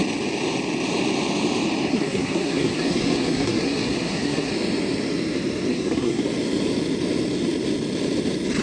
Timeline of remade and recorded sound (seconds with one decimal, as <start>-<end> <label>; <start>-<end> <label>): 0.0-1.9 recorded; 1.9-4.5 remade; 4.5-5.7 recorded; 5.7-6.2 remade; 6.2-8.6 recorded